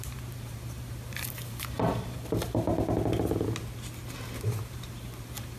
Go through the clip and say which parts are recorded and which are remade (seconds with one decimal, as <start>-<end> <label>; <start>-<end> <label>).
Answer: 0.0-2.7 remade; 2.7-4.6 recorded; 4.6-5.6 remade